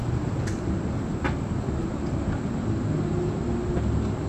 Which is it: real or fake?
real